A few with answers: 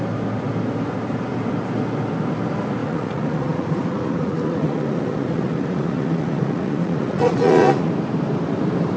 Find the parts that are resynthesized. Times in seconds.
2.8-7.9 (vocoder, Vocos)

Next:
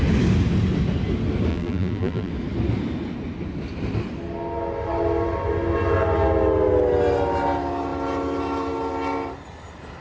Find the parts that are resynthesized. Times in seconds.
1.5-2.3 (vocoder, BigVGAN v2)

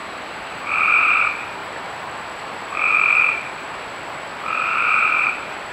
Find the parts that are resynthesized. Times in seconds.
0.0-5.7 (vocoder, BigVGAN v2)

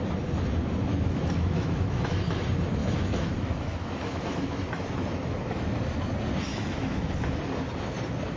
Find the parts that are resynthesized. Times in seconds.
0.9-2.4 (autoencoder, DAC-VAE); 2.8-5.8; 6.5-7.1